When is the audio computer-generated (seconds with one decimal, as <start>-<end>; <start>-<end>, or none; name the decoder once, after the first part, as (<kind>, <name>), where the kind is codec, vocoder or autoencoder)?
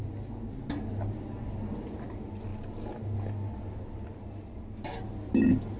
none